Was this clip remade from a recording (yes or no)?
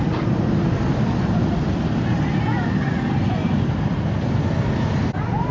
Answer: no